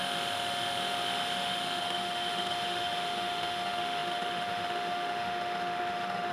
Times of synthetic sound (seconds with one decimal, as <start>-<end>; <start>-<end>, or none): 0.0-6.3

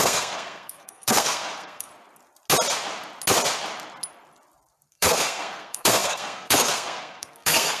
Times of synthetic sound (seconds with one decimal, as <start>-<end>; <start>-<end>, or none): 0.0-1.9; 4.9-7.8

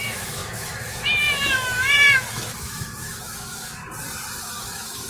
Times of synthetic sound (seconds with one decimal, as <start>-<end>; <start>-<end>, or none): 0.0-3.8; 4.4-5.1